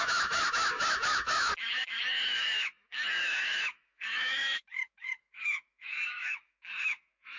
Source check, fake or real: fake